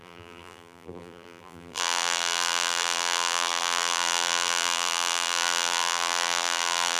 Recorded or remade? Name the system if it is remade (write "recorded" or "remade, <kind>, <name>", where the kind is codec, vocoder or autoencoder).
remade, vocoder, BigVGAN v2